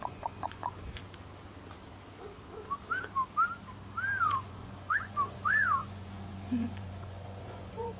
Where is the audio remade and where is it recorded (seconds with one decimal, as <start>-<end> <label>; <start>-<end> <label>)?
0.0-1.0 remade; 1.0-4.2 recorded; 4.2-8.0 remade